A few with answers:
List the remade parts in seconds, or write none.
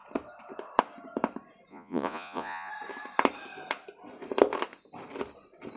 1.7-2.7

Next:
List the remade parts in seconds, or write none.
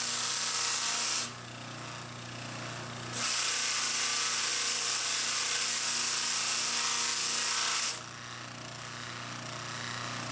none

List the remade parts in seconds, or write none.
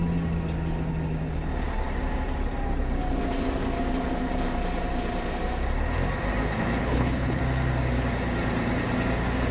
6.8-7.4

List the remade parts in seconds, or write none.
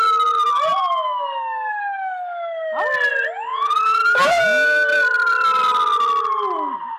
3.5-4.4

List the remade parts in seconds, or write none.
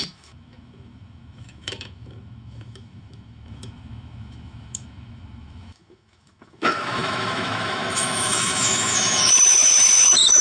0.0-10.4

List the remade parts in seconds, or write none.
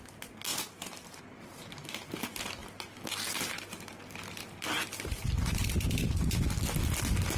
none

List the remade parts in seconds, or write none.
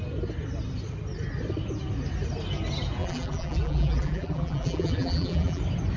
3.0-5.6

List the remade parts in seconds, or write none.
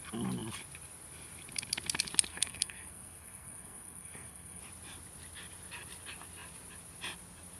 2.3-4.6